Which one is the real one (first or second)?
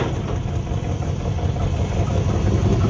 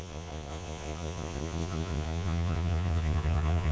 first